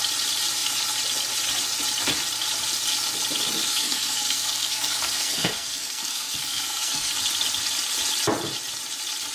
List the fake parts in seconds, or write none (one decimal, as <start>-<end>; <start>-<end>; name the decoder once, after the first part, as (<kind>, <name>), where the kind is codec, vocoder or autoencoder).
3.7-7.1 (codec, SNAC)